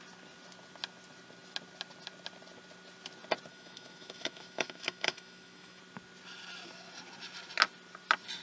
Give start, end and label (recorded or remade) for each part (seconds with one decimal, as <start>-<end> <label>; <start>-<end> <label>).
0.0-3.5 recorded; 3.5-5.8 remade; 5.8-8.4 recorded